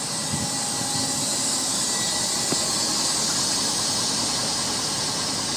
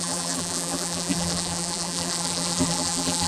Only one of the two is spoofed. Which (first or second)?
second